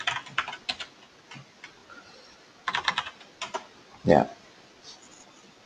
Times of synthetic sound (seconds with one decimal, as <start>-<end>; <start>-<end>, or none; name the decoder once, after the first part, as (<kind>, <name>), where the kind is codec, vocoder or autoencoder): none